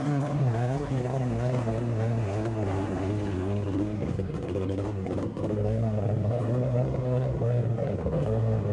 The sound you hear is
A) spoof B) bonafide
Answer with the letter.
A